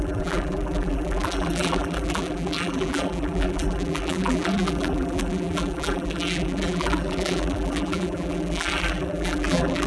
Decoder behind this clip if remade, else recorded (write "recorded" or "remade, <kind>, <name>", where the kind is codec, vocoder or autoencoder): remade, vocoder, BigVGAN v2